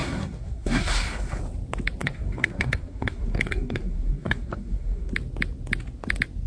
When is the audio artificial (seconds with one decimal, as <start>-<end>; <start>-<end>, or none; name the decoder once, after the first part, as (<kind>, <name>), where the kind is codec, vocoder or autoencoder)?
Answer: 0.0-1.4 (codec, SNAC); 2.0-5.1